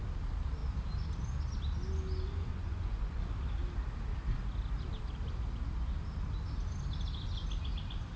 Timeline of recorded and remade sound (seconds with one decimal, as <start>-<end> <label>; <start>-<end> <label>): 0.0-2.5 recorded; 2.5-3.2 remade; 3.2-8.2 recorded

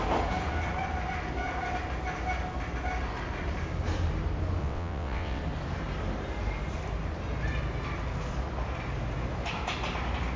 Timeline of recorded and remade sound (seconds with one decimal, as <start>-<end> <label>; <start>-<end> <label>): 0.0-4.6 recorded; 4.6-5.4 remade; 5.4-10.4 recorded

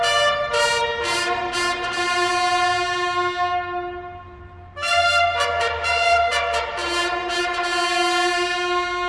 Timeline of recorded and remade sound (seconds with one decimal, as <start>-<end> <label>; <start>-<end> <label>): 0.0-9.1 recorded

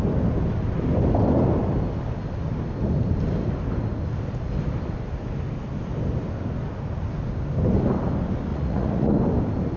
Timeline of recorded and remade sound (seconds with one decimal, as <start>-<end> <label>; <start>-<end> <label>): 0.0-8.5 recorded; 8.5-9.1 remade; 9.1-9.8 recorded

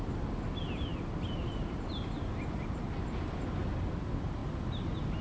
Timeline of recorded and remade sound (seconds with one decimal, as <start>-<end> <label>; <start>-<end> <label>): 0.0-5.2 recorded

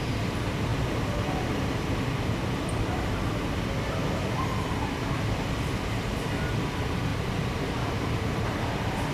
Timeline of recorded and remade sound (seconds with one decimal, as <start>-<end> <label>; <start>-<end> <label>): 0.0-9.1 recorded

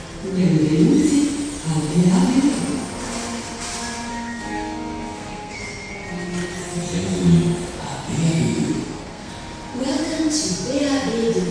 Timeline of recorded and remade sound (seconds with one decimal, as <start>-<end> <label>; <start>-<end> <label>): 0.0-4.1 recorded; 4.1-5.9 remade; 5.9-8.8 recorded; 8.8-9.3 remade; 9.3-11.5 recorded

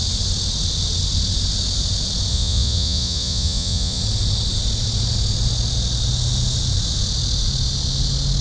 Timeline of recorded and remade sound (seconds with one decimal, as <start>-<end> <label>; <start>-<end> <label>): 0.0-2.3 recorded; 2.3-4.0 remade; 4.0-8.4 recorded